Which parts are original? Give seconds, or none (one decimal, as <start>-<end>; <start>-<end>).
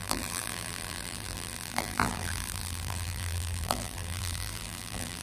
none